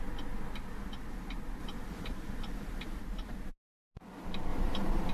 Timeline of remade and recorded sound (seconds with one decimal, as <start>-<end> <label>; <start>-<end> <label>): 0.0-1.6 recorded; 1.6-3.0 remade; 3.0-4.5 recorded; 4.5-5.1 remade